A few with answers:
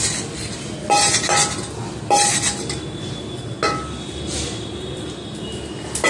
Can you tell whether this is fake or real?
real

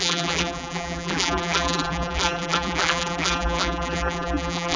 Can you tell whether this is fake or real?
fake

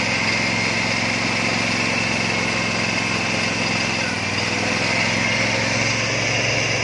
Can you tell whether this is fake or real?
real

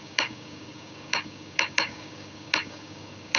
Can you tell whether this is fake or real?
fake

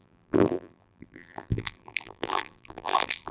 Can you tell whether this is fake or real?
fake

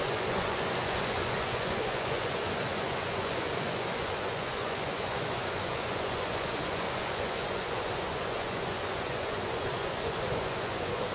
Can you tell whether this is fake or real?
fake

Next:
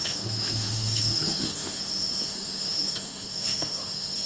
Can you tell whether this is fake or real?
fake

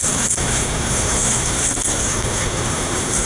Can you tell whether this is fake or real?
fake